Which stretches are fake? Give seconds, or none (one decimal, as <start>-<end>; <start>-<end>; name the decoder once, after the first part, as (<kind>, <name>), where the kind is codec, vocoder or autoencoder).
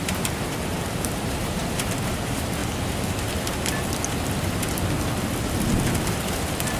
0.0-2.6 (vocoder, BigVGAN v2)